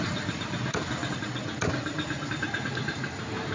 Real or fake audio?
real